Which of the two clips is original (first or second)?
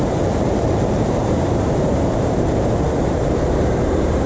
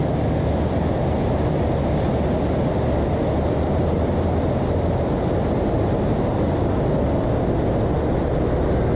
second